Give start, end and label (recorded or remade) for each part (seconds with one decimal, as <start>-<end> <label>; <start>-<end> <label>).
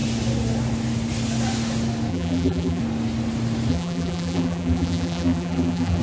0.0-2.1 recorded; 2.1-2.8 remade; 2.8-3.7 recorded; 3.7-6.0 remade